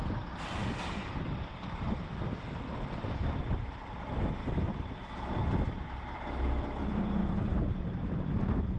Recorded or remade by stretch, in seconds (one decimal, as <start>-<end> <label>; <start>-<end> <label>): 0.0-1.5 recorded; 1.5-3.4 remade; 3.4-8.8 recorded